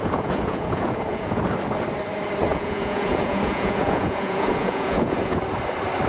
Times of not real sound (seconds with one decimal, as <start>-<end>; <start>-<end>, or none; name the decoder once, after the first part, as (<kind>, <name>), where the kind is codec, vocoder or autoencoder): 0.0-1.4 (vocoder, Vocos); 2.5-5.4